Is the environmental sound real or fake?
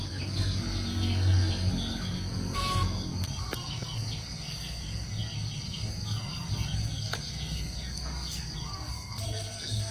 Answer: fake